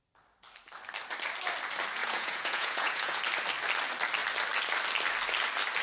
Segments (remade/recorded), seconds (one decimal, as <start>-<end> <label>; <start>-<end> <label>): 0.0-2.0 recorded; 2.0-3.2 remade; 3.2-5.8 recorded